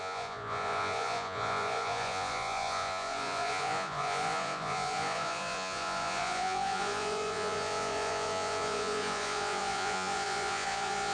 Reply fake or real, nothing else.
fake